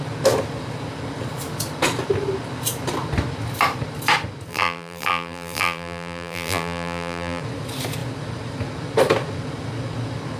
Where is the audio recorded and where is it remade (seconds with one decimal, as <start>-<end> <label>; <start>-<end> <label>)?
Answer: 0.0-4.5 recorded; 4.5-7.4 remade; 7.4-10.4 recorded